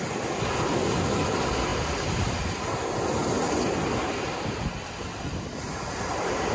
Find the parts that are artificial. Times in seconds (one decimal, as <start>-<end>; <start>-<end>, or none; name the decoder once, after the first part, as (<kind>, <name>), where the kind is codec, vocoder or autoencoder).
none